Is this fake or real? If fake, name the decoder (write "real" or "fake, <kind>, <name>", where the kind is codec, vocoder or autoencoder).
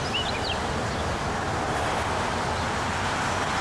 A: real